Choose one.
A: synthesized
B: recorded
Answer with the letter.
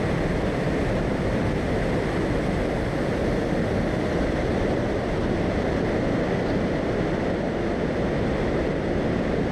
B